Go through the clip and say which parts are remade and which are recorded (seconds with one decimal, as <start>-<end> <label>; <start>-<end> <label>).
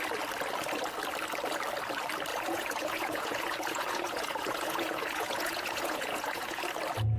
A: 0.0-2.3 recorded; 2.3-6.6 remade; 6.6-7.2 recorded